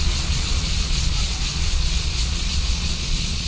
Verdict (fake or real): fake